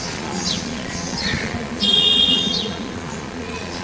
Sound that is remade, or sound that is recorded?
remade